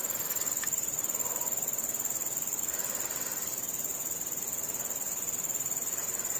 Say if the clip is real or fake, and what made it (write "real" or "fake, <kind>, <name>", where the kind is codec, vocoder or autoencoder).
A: real